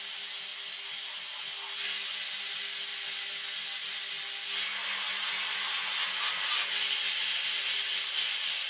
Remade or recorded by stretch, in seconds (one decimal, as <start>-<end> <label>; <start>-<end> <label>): 0.0-8.7 recorded